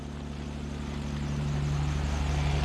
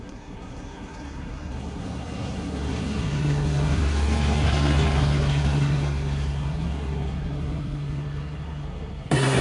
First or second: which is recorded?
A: first